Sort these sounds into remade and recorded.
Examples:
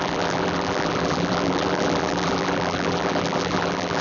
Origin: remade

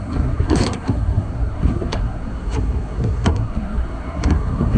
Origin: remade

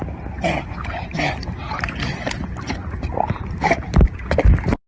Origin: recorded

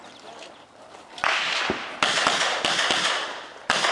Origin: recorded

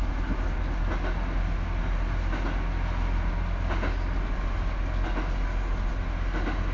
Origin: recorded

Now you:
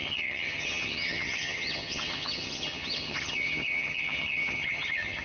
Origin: remade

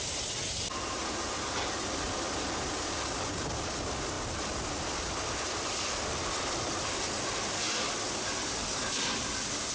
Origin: recorded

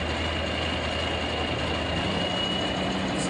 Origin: recorded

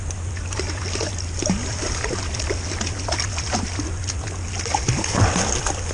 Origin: recorded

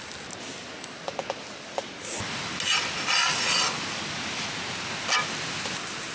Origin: recorded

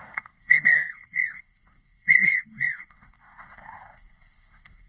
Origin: remade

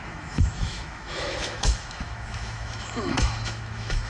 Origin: remade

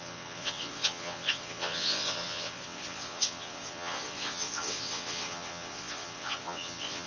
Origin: remade